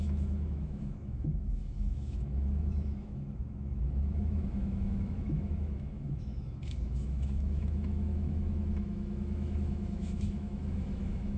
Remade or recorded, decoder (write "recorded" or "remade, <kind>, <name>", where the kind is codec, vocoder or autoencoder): remade, autoencoder, DAC-VAE